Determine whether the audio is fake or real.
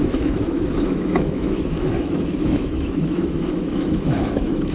fake